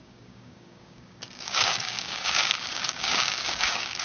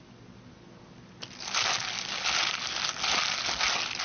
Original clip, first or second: second